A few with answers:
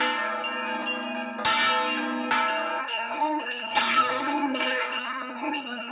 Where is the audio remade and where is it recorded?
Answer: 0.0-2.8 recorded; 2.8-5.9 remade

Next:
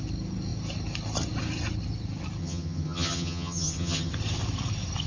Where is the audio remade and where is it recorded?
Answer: 0.0-2.4 recorded; 2.4-4.1 remade; 4.1-5.1 recorded

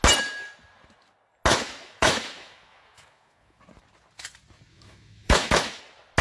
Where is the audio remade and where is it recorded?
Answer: 0.0-1.5 recorded; 1.5-3.6 remade; 3.6-4.7 recorded; 4.7-5.8 remade; 5.8-6.2 recorded

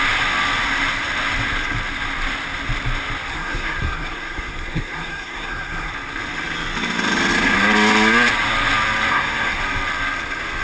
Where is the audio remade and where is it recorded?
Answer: 0.0-3.3 recorded; 3.3-5.9 remade; 5.9-9.1 recorded; 9.1-9.6 remade; 9.6-10.6 recorded

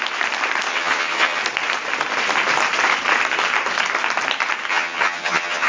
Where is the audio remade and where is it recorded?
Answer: 0.0-0.7 recorded; 0.7-1.4 remade; 1.4-4.7 recorded; 4.7-5.7 remade

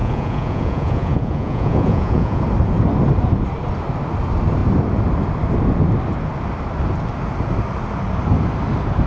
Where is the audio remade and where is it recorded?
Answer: 0.0-2.4 remade; 2.4-9.1 recorded

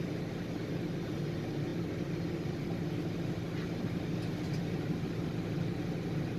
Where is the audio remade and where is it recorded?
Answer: 0.0-6.4 recorded

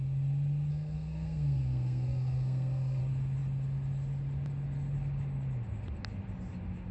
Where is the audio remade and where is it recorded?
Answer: 0.0-0.7 recorded; 0.7-3.0 remade; 3.0-6.9 recorded